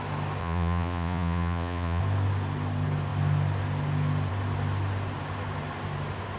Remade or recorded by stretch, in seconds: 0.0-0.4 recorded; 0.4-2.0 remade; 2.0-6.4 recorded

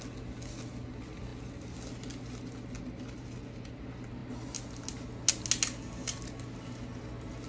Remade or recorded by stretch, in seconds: 0.0-7.5 recorded

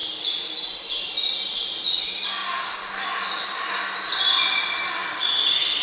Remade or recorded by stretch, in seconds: 0.0-2.4 recorded; 2.4-3.7 remade; 3.7-5.0 recorded; 5.0-5.8 remade

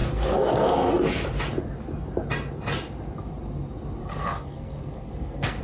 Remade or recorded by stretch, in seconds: 0.0-0.9 remade; 0.9-4.0 recorded; 4.0-5.6 remade

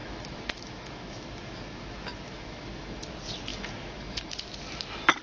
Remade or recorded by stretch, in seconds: 0.0-3.1 remade; 3.1-3.5 recorded; 3.5-4.3 remade; 4.3-5.2 recorded